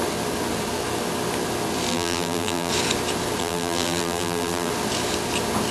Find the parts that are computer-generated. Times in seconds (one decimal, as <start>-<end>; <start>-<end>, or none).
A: 1.9-2.7; 3.4-4.7

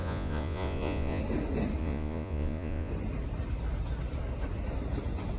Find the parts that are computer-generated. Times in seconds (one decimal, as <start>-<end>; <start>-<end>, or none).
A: 0.0-1.2; 1.8-2.9

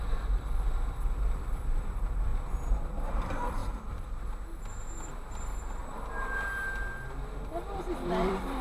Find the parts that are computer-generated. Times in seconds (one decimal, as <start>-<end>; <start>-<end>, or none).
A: 0.0-2.3; 3.1-3.6; 4.4-5.8; 7.4-8.6

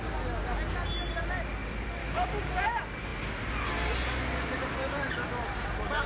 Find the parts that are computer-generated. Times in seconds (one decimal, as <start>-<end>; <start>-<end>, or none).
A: 2.0-2.6

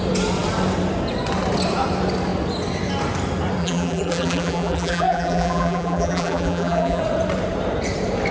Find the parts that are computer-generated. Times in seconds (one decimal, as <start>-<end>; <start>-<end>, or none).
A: 3.6-7.0